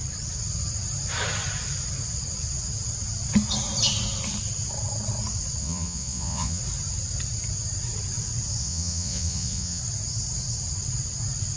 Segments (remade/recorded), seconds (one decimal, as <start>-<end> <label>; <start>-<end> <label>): 0.0-5.6 recorded; 5.6-6.6 remade; 6.6-8.6 recorded; 8.6-9.8 remade; 9.8-11.6 recorded